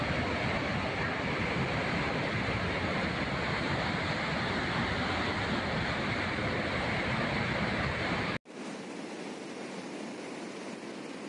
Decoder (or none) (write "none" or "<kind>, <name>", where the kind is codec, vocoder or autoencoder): none